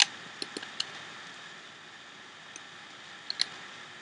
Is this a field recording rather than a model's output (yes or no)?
yes